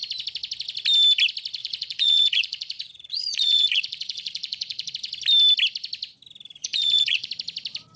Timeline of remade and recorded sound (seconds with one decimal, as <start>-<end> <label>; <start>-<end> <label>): 0.0-1.6 recorded; 1.6-4.9 remade; 4.9-6.6 recorded; 6.6-7.3 remade; 7.3-8.0 recorded